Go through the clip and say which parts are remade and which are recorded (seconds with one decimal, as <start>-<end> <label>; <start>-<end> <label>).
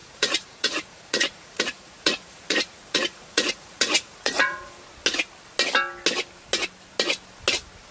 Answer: 0.0-4.7 remade; 4.7-7.9 recorded